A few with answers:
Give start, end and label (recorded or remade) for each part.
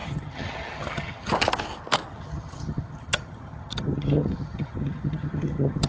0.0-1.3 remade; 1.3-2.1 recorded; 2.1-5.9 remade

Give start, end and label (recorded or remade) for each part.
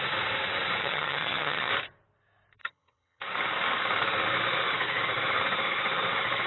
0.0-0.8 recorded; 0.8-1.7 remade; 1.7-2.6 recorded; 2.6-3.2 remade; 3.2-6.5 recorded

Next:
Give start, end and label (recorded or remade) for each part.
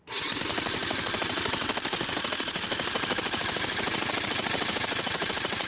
0.0-5.7 recorded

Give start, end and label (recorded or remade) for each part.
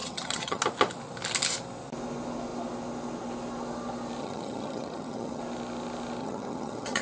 0.0-0.6 remade; 0.6-4.2 recorded; 4.2-5.4 remade; 5.4-6.2 recorded; 6.2-7.0 remade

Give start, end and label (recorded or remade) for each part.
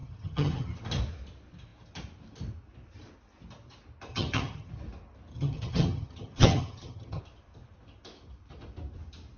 0.0-0.8 remade; 0.8-4.1 recorded; 4.1-4.7 remade; 4.7-5.3 recorded; 5.3-7.2 remade; 7.2-9.4 recorded